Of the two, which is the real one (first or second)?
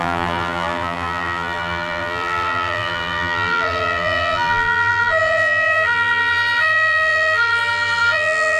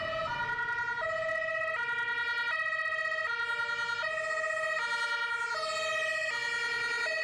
second